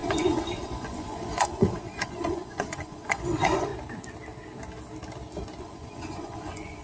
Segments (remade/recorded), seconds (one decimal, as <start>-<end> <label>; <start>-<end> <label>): 0.0-3.7 remade; 3.7-5.6 recorded; 5.6-6.8 remade